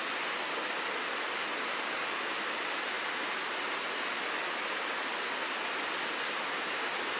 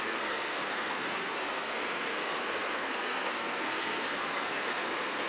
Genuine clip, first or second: first